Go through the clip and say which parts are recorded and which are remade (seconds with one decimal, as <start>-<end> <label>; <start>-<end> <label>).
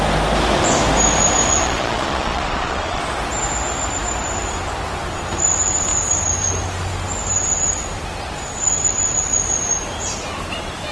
0.0-1.5 recorded; 1.5-3.0 remade; 3.0-10.9 recorded